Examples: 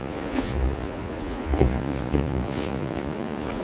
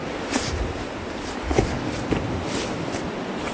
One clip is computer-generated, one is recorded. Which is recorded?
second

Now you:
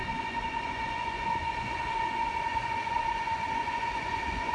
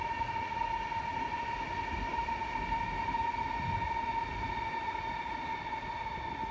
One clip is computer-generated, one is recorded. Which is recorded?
second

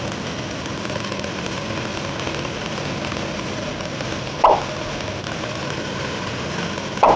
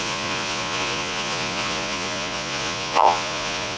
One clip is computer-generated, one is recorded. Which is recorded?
first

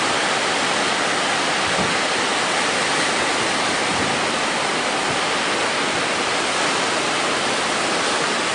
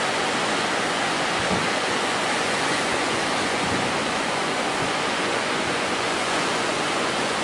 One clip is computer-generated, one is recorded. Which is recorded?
first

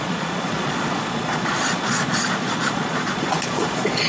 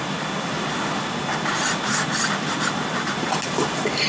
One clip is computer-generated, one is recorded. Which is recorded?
second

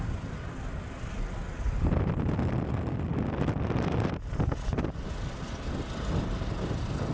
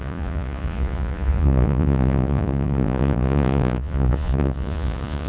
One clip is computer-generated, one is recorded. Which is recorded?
first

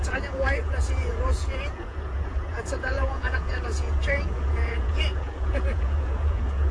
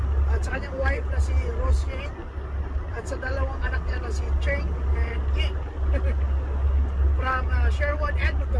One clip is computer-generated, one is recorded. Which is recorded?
second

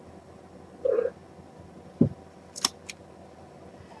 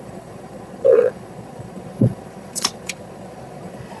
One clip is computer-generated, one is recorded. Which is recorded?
first